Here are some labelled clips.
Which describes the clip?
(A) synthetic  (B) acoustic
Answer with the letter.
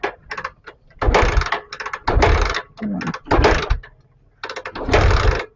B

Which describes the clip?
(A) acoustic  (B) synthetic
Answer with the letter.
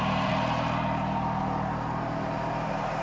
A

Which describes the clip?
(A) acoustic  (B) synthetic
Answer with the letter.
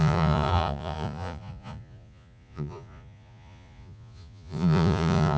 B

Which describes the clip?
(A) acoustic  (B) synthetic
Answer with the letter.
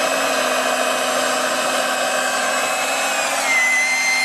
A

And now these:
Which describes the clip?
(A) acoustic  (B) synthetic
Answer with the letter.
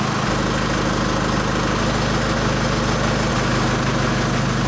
A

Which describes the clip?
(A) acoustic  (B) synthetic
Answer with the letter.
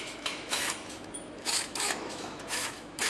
B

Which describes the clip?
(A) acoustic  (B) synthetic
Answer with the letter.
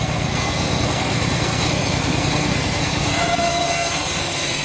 B